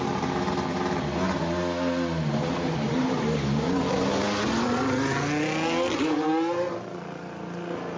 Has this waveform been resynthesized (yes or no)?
no